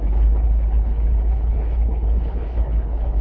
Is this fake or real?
fake